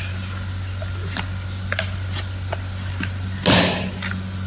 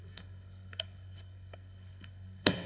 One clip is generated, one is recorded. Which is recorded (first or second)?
first